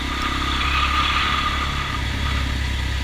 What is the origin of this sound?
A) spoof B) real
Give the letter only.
B